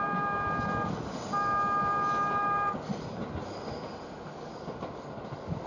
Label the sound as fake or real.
real